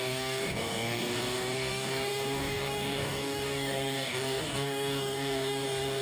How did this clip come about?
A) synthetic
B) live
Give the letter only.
A